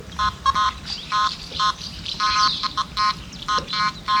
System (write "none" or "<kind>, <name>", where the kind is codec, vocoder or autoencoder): vocoder, BigVGAN v2